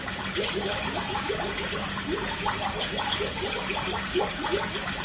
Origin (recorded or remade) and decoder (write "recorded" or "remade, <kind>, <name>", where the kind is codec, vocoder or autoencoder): remade, vocoder, BigVGAN v2